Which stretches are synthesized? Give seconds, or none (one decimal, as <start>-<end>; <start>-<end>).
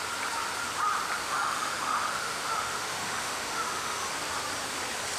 1.2-4.0